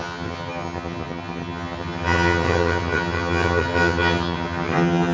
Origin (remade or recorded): remade